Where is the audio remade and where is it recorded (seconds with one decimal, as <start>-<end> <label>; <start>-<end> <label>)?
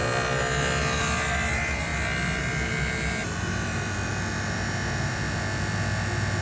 0.0-3.2 recorded; 3.2-4.1 remade; 4.1-6.4 recorded